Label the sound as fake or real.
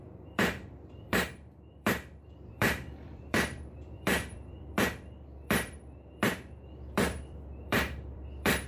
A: fake